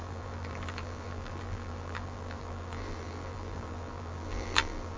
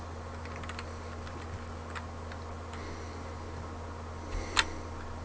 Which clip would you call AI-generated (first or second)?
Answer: first